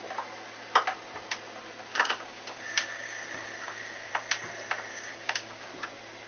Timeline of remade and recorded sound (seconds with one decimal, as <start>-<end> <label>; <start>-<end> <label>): 0.0-1.9 recorded; 1.9-4.1 remade; 4.1-4.9 recorded; 4.9-5.7 remade; 5.7-6.3 recorded